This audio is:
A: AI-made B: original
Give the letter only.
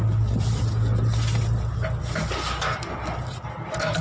B